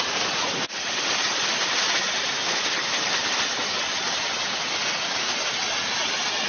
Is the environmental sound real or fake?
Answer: real